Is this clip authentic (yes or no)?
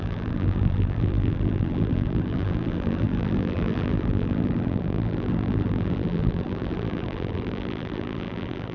no